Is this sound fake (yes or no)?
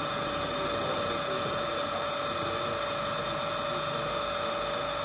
no